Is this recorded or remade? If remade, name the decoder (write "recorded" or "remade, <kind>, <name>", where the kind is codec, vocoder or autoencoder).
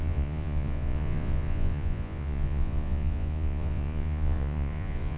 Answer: remade, vocoder, Vocos